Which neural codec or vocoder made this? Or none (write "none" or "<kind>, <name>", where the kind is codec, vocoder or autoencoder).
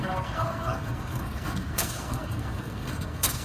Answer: codec, SNAC